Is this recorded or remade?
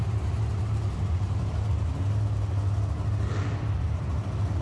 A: recorded